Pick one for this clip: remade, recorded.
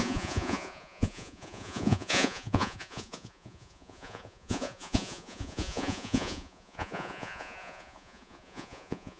remade